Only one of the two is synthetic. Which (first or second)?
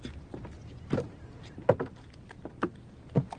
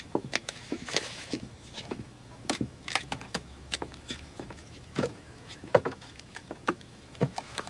second